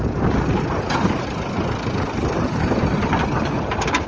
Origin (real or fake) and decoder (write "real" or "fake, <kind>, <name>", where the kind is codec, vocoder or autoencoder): real